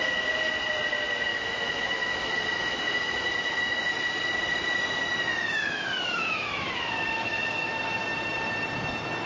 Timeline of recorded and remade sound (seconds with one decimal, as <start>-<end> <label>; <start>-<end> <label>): 0.0-1.3 recorded; 1.3-3.9 remade; 3.9-5.3 recorded; 5.3-7.7 remade; 7.7-9.3 recorded